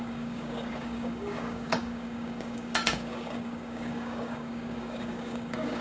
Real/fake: fake